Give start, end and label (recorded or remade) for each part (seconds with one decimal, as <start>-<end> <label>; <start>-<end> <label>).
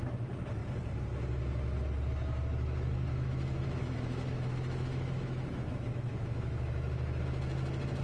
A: 0.0-3.1 recorded; 3.1-7.2 remade; 7.2-8.0 recorded